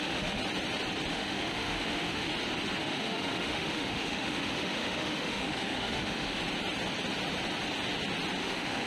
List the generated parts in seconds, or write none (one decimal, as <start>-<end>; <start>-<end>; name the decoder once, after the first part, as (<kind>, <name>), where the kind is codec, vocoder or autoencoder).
0.0-0.4 (autoencoder, DAC-VAE); 1.1-2.3; 2.8-6.4; 8.4-8.9